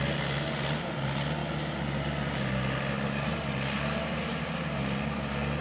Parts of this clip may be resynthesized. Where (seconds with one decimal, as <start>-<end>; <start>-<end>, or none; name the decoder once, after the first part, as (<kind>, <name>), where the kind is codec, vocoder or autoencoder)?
none